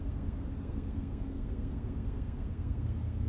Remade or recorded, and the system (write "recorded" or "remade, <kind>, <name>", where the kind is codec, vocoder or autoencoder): remade, codec, SNAC